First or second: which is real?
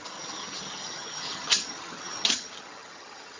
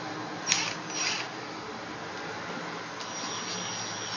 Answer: second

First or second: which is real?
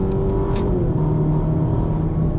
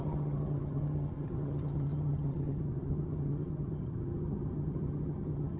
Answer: first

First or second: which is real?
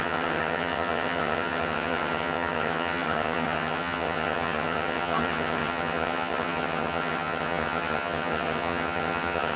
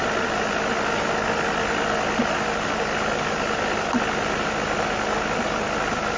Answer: second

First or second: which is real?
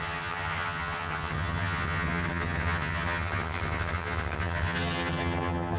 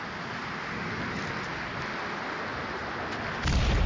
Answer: second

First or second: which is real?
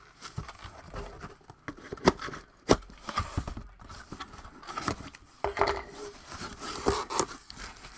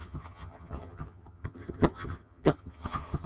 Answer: first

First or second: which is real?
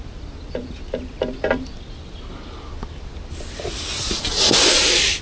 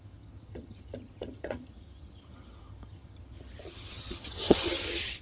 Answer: first